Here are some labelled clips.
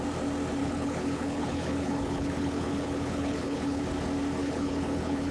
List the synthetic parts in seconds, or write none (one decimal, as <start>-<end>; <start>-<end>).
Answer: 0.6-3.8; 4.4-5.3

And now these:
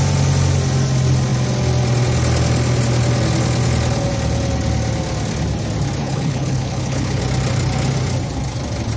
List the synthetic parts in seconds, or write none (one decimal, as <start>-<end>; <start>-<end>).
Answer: 6.0-7.2

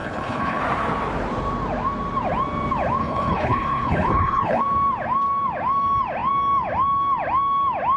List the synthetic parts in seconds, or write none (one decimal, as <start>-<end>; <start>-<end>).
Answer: 0.0-0.6; 3.0-4.6

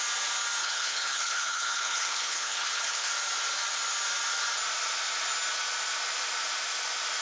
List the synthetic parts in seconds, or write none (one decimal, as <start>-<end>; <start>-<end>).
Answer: 0.6-3.1

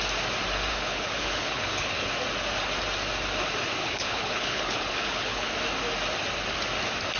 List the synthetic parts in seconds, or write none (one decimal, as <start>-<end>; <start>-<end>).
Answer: 0.7-2.1; 3.8-5.5

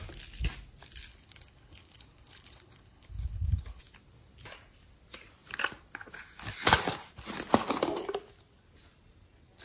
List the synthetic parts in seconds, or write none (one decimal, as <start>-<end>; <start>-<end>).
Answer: 1.1-3.8

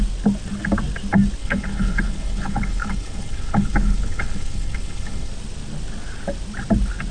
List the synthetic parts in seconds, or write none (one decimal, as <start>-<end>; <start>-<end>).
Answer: 1.4-5.3